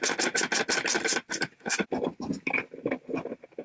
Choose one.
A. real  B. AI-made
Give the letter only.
A